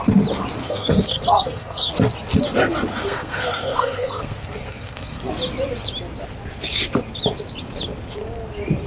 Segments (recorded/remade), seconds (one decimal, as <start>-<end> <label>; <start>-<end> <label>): 0.0-0.6 recorded; 0.6-1.9 remade; 1.9-2.9 recorded; 2.9-5.3 remade; 5.3-8.9 recorded